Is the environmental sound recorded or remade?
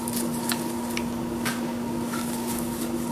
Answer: remade